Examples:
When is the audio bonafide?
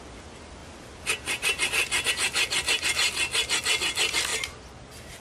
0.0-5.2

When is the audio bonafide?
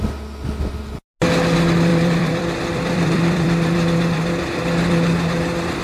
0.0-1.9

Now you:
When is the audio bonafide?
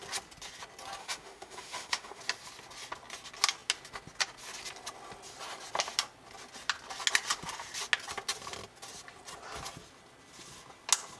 0.0-1.0; 2.2-11.2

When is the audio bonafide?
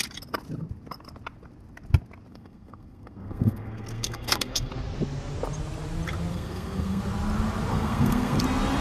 0.0-2.3; 4.7-6.3; 7.0-7.7; 8.4-8.8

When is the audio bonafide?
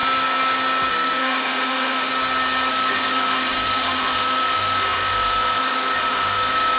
0.0-0.9; 2.1-2.7